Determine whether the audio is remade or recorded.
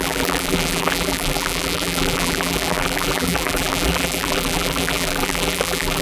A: remade